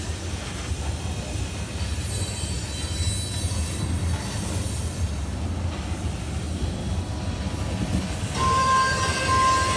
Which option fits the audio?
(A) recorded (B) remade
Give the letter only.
A